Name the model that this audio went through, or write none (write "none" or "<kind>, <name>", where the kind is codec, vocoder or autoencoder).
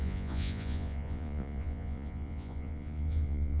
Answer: vocoder, Vocos